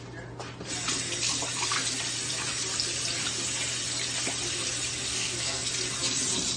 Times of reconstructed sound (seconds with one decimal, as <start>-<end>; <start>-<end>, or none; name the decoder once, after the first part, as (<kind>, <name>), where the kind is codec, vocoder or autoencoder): 5.1-5.7 (codec, SNAC)